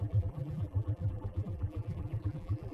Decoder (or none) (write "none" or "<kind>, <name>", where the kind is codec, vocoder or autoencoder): vocoder, BigVGAN v2